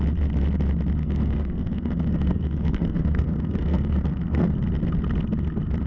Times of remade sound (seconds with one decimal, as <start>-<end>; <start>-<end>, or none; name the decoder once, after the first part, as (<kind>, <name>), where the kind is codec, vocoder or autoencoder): 1.0-4.5 (codec, SNAC)